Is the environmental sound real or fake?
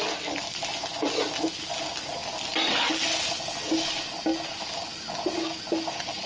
real